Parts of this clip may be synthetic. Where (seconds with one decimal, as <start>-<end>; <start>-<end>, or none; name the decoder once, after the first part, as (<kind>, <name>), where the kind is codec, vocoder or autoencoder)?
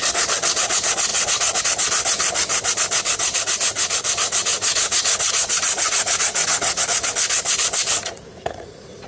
1.1-1.6 (vocoder, Vocos); 4.5-6.8; 8.0-9.1